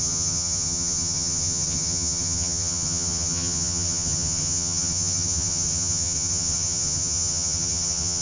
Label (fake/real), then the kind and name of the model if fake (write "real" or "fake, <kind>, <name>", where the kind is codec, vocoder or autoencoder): fake, vocoder, HiFi-GAN